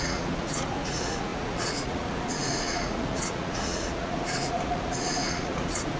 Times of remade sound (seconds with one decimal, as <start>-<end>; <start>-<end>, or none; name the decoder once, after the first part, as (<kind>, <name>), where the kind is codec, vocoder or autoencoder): 0.0-6.0 (vocoder, Vocos)